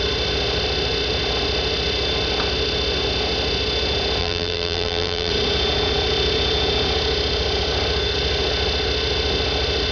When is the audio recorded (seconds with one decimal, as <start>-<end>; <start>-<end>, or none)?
0.0-4.2; 5.3-9.9